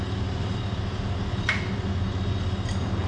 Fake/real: real